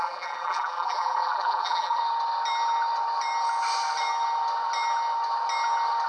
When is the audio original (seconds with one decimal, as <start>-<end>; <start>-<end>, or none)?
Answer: 2.0-6.1